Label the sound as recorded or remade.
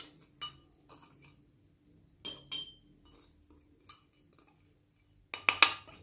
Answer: recorded